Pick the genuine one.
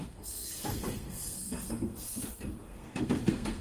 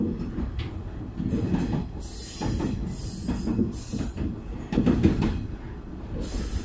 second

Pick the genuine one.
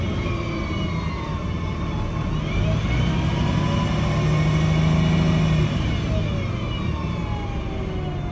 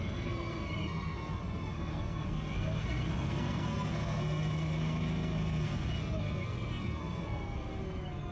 first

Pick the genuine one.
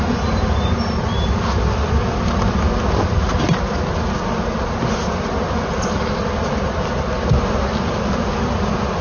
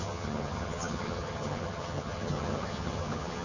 first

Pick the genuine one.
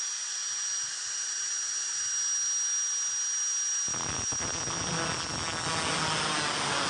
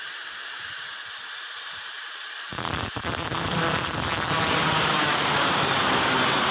first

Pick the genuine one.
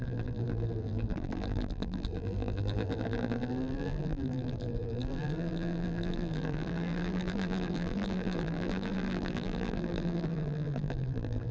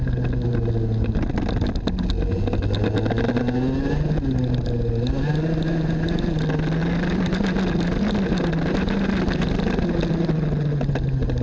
second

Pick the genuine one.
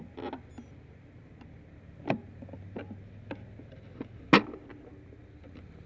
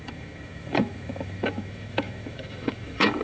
first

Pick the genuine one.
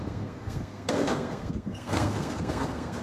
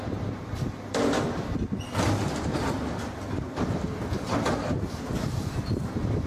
second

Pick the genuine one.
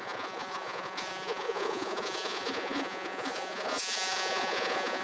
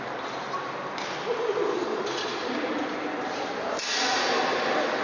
second